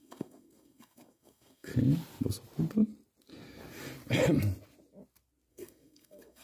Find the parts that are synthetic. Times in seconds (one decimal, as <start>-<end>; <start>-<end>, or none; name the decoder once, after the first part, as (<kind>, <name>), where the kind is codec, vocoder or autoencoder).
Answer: 0.0-1.7 (codec, SNAC); 5.5-6.4